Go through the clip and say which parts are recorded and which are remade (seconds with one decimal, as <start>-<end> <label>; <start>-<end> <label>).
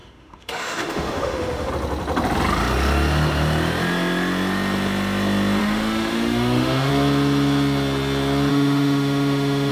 0.0-1.7 remade; 1.7-5.6 recorded; 5.6-6.9 remade; 6.9-8.5 recorded; 8.5-9.7 remade